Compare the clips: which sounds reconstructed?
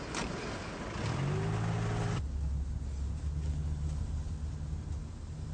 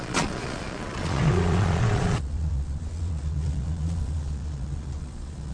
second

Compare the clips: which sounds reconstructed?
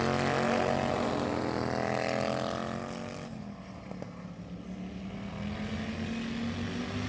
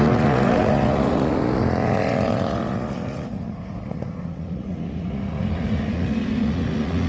second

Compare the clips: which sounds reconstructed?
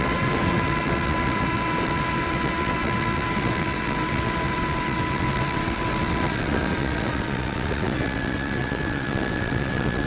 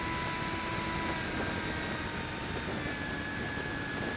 first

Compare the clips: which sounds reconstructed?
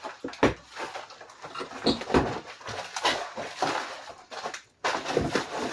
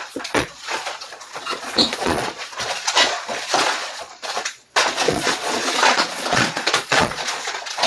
second